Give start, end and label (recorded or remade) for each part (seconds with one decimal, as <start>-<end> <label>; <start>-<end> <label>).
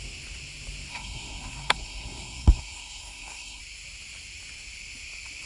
0.0-0.9 recorded; 0.9-3.6 remade; 3.6-5.5 recorded